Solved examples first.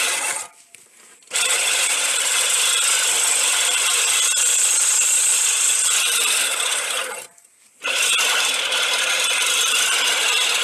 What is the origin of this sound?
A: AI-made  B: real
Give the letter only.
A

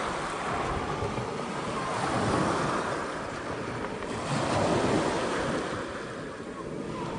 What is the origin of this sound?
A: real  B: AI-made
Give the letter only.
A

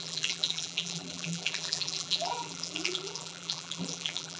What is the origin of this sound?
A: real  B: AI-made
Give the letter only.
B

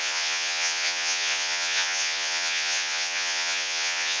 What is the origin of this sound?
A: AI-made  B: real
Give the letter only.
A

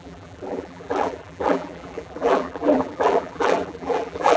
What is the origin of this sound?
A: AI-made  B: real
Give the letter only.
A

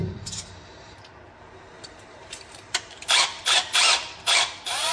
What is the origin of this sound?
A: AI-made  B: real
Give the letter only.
A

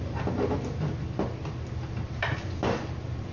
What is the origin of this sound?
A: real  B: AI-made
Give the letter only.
B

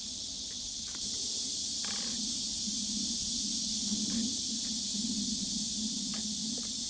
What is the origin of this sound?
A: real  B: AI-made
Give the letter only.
A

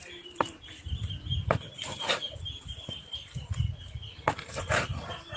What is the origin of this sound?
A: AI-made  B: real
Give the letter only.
B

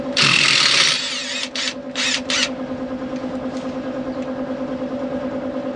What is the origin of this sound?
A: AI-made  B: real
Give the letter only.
B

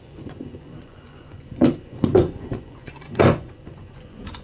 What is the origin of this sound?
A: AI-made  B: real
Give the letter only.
A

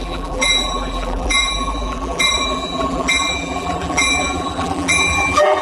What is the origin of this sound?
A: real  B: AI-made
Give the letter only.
B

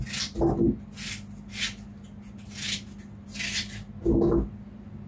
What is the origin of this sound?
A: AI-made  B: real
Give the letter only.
B